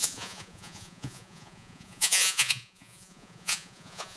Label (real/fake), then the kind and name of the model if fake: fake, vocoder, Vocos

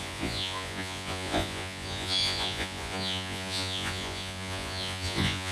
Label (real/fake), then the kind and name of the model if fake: fake, vocoder, Vocos